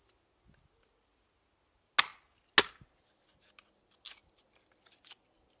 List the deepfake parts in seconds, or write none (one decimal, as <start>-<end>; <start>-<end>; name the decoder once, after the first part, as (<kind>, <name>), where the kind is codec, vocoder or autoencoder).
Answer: none